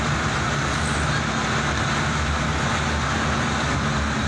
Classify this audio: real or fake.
real